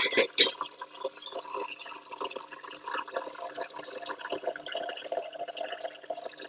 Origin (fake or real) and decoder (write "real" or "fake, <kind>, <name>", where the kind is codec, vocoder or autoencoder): real